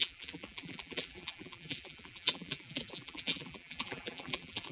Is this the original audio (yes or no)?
no